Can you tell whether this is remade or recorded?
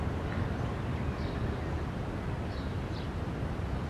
recorded